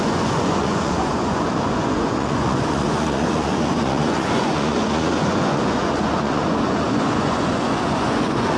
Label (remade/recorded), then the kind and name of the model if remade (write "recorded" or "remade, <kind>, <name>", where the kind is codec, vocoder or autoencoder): remade, vocoder, Vocos